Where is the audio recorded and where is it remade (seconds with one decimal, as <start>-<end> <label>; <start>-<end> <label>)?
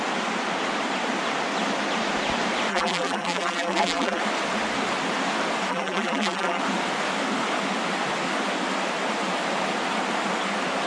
0.0-2.7 recorded; 2.7-4.2 remade; 4.2-5.7 recorded; 5.7-6.6 remade; 6.6-10.9 recorded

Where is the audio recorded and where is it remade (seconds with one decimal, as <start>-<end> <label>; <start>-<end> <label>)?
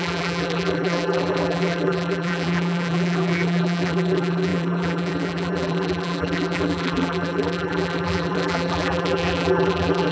0.0-10.1 remade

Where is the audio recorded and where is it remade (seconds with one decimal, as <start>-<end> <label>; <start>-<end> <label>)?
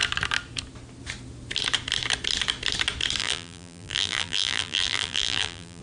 0.0-3.2 recorded; 3.2-5.8 remade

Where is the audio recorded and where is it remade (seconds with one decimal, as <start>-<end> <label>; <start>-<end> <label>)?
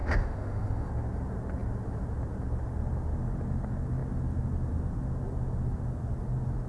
0.0-0.9 remade; 0.9-6.7 recorded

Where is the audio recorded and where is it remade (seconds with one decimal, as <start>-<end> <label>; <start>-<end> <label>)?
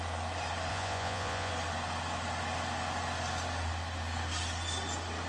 0.0-0.7 recorded; 0.7-1.5 remade; 1.5-5.3 recorded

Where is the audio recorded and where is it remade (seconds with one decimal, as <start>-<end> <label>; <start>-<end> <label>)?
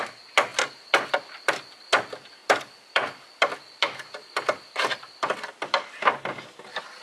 0.0-0.5 recorded; 0.5-1.5 remade; 1.5-2.4 recorded; 2.4-5.5 remade; 5.5-7.0 recorded